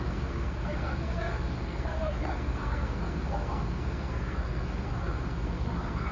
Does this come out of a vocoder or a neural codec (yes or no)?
yes